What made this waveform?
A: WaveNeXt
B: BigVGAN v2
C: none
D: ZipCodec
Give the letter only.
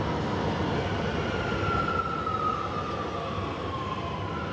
C